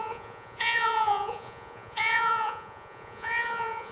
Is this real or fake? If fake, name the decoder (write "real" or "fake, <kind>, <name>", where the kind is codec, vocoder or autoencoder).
fake, vocoder, Vocos